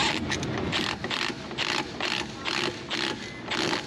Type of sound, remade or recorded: recorded